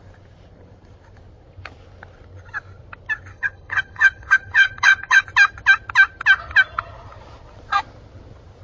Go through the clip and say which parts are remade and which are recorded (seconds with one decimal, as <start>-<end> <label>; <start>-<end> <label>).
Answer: 0.0-3.3 recorded; 3.3-5.2 remade; 5.2-8.6 recorded